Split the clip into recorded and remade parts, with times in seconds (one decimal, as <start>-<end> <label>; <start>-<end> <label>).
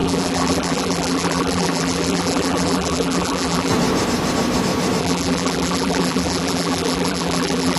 0.0-3.7 remade; 3.7-5.0 recorded; 5.0-7.8 remade